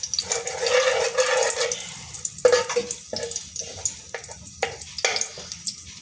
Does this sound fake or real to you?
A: real